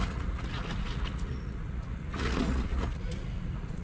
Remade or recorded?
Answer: remade